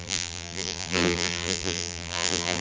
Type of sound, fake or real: fake